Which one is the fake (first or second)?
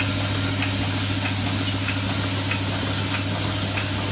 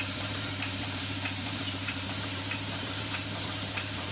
second